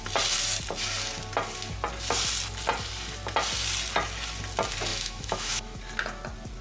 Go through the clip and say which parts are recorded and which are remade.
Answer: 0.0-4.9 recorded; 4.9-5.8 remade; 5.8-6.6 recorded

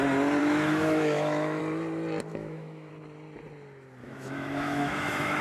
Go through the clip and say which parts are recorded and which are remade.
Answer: 0.0-0.4 recorded; 0.4-1.6 remade; 1.6-2.3 recorded; 2.3-2.9 remade; 2.9-4.0 recorded; 4.0-5.4 remade

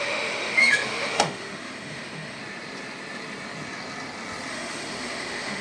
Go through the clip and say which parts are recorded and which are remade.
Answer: 0.0-2.4 remade; 2.4-4.5 recorded; 4.5-5.6 remade

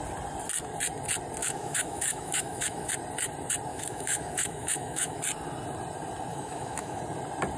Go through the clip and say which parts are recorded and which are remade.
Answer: 0.0-1.4 recorded; 1.4-2.9 remade; 2.9-3.7 recorded; 3.7-5.2 remade; 5.2-6.3 recorded; 6.3-7.0 remade; 7.0-7.6 recorded

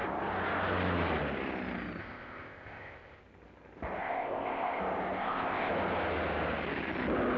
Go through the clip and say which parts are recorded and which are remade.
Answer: 0.0-2.0 recorded; 2.0-3.2 remade; 3.2-4.0 recorded; 4.0-4.8 remade; 4.8-5.2 recorded; 5.2-5.7 remade; 5.7-7.4 recorded

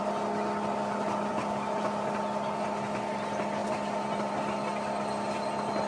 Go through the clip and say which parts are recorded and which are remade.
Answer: 0.0-5.9 recorded

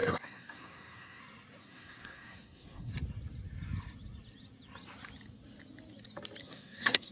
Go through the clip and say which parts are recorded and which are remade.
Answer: 0.0-1.2 remade; 1.2-1.6 recorded; 1.6-2.9 remade; 2.9-6.4 recorded; 6.4-7.1 remade